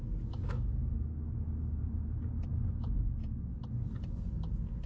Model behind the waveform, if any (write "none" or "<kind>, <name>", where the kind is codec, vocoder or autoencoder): none